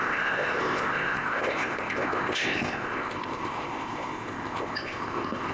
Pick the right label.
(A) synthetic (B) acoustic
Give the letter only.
A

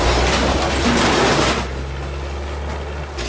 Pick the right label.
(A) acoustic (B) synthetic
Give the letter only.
A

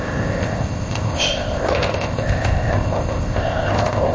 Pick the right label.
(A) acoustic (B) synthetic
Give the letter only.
B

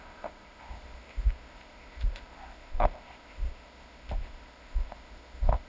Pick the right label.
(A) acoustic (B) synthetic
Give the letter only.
B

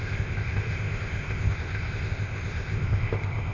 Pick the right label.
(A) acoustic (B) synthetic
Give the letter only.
B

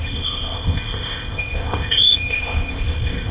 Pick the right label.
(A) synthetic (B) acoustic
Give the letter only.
A